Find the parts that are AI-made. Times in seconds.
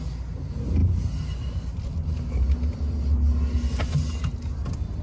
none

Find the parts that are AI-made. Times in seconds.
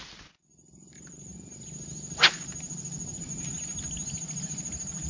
none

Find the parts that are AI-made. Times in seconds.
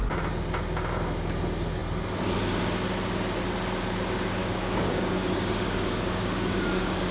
4.4-7.1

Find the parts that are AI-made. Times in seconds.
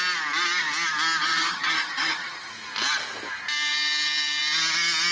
1.2-2.5